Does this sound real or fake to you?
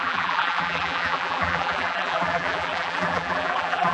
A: fake